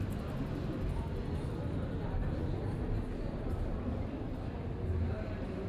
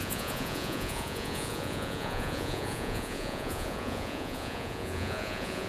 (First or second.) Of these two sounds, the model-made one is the second